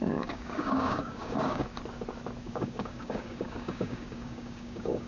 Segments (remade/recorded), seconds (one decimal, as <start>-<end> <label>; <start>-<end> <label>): 0.0-1.7 remade; 1.7-2.4 recorded; 2.4-5.1 remade